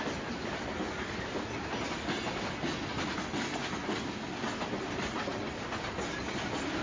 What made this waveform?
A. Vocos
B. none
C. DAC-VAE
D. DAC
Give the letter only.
B